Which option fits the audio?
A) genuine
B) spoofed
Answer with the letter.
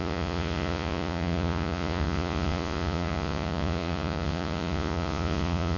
B